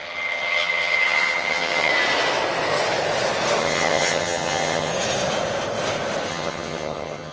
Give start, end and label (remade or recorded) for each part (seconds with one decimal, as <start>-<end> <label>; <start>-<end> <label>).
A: 0.0-1.9 remade; 1.9-3.6 recorded; 3.6-4.9 remade; 4.9-6.3 recorded; 6.3-7.3 remade